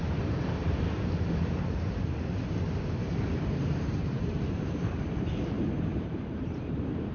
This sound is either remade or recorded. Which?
remade